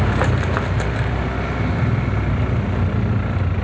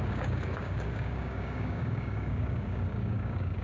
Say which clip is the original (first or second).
first